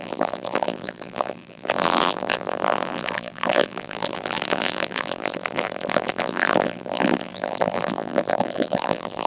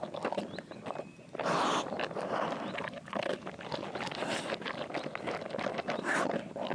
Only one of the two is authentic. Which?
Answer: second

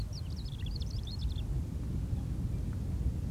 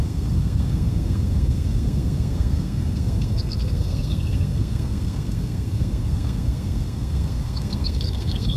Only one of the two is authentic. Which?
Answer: first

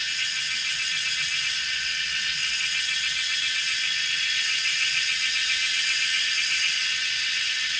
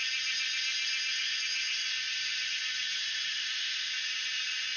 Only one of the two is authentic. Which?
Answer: second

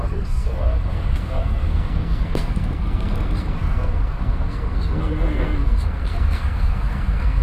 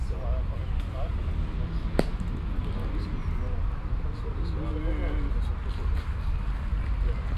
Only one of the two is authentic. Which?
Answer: second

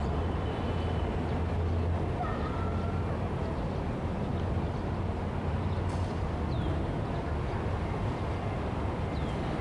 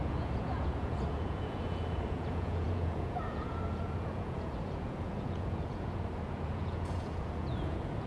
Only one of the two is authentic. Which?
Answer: first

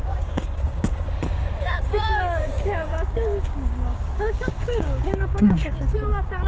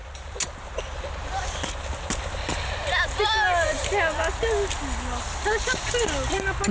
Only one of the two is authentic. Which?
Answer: second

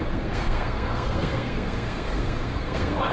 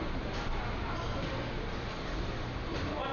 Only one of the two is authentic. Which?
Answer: second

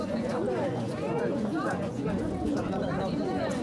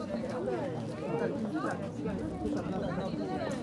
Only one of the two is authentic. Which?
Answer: second